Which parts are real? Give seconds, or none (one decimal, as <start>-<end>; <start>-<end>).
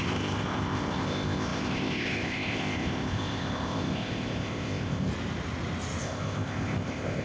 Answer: 5.1-6.0